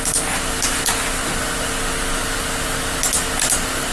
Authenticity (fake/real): real